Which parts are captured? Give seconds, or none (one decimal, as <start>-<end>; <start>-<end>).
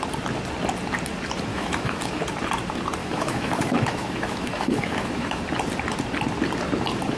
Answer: 0.0-1.5; 2.2-3.0; 5.4-7.2